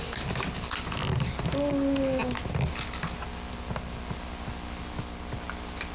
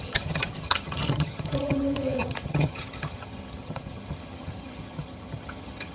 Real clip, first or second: first